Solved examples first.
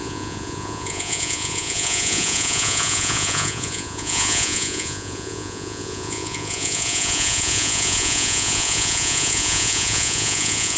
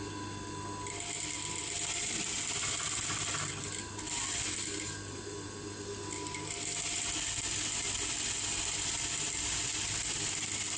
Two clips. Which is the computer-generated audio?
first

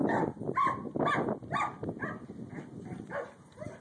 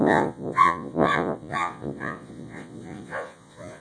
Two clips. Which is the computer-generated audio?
second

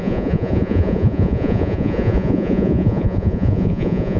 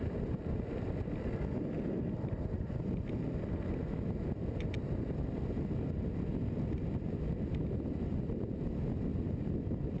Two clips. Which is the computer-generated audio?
first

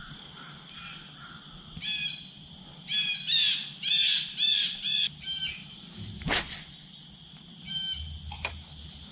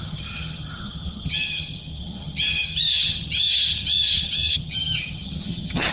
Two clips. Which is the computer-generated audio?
second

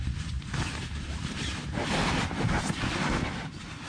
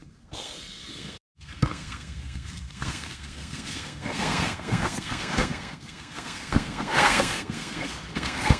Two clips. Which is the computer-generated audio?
second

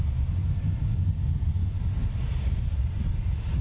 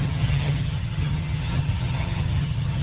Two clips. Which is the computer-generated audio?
second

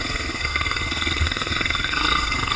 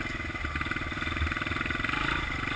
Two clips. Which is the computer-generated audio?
first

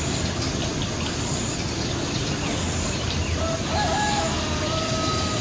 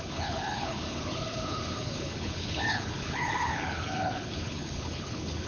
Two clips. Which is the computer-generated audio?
second